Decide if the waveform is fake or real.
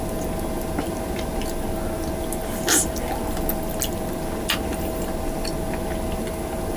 real